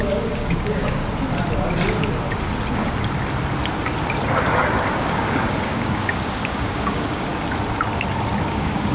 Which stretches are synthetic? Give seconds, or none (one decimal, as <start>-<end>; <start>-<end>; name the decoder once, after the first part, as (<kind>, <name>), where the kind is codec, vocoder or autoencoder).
0.0-1.0 (codec, DAC); 5.0-7.3; 8.4-8.9